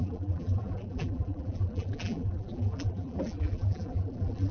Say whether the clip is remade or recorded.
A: remade